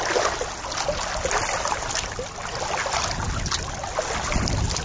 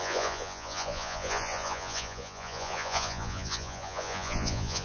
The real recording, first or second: first